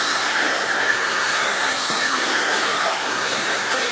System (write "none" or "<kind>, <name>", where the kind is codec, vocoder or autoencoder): codec, SNAC